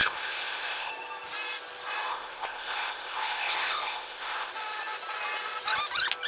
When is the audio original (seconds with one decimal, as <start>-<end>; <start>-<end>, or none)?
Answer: 0.9-2.1; 4.5-6.3